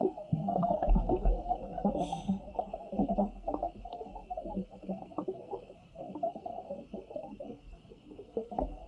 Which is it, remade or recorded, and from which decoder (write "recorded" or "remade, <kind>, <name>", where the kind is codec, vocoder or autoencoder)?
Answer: remade, codec, SNAC